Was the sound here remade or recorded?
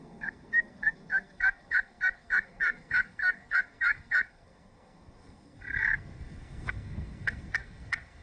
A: remade